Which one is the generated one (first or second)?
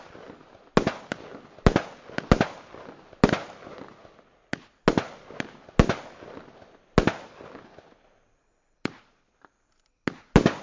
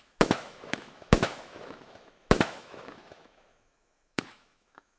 second